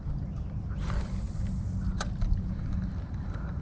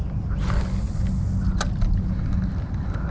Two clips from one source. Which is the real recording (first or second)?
second